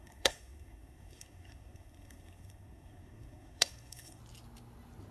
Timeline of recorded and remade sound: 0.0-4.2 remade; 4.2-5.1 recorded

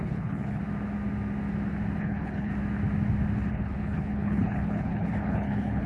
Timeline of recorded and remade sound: 0.0-0.6 remade; 0.6-2.0 recorded; 2.0-2.5 remade; 2.5-3.5 recorded; 3.5-5.9 remade

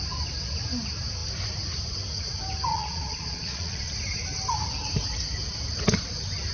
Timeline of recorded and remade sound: 0.0-2.7 recorded; 2.7-3.8 remade; 3.8-6.5 recorded

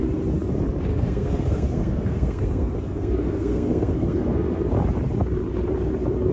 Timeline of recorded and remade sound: 0.0-0.9 recorded; 0.9-4.7 remade; 4.7-6.3 recorded

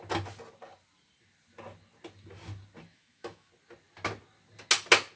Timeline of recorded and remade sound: 0.0-2.9 recorded; 2.9-3.5 remade; 3.5-5.2 recorded

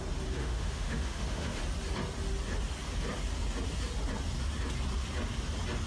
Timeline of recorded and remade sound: 0.0-0.4 recorded; 0.4-1.6 remade; 1.6-5.9 recorded